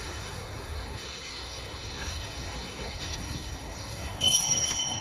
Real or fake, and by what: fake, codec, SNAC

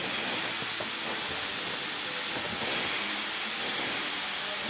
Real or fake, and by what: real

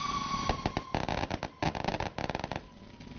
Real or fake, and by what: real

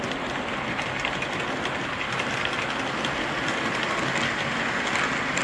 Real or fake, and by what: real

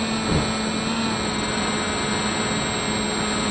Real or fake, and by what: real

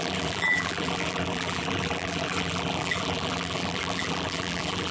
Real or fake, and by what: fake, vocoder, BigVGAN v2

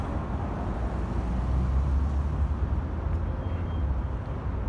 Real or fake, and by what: real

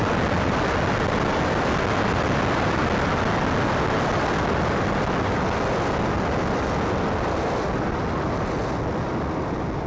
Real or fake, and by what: real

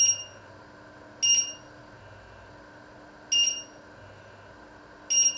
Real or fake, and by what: real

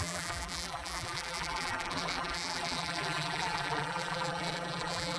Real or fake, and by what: fake, vocoder, BigVGAN v2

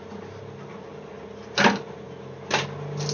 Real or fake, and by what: real